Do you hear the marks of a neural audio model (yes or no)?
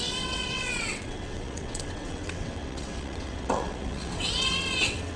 yes